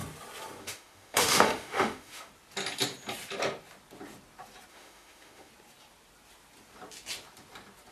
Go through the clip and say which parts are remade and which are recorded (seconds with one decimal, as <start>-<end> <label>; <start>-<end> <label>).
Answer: 0.0-0.6 recorded; 0.6-2.3 remade; 2.3-4.7 recorded; 4.7-5.5 remade; 5.5-7.9 recorded